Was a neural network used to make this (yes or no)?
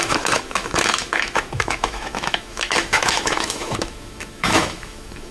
yes